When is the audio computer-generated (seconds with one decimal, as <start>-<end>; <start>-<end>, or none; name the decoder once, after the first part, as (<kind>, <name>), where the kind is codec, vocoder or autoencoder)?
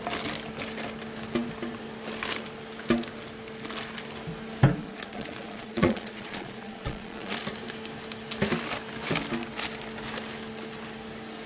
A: 4.8-7.4 (vocoder, Vocos)